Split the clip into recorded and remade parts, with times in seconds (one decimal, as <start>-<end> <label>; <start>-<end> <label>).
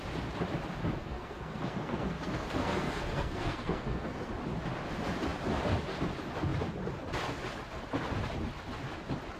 0.0-1.0 recorded; 1.0-4.3 remade; 4.3-9.4 recorded